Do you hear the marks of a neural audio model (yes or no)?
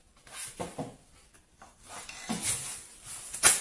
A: no